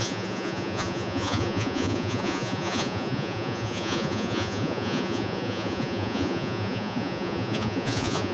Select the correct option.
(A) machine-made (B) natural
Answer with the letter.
A